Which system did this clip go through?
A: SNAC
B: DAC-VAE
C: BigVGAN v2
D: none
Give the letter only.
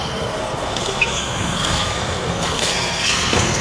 A